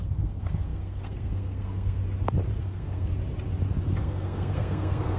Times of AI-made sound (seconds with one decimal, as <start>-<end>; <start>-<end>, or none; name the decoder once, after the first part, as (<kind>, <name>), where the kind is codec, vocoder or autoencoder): 0.0-2.0 (codec, SNAC); 2.6-3.1; 3.9-5.2